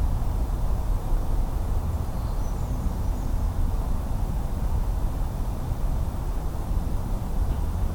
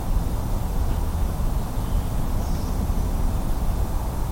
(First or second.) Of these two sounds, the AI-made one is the first